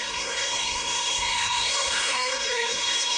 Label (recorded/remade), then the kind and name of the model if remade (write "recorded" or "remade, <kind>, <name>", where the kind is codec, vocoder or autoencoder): remade, codec, SNAC